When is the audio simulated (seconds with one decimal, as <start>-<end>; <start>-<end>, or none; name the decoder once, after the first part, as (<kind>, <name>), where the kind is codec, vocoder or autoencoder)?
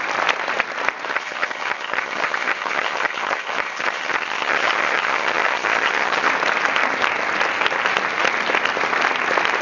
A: 1.1-6.3 (vocoder, HiFi-GAN)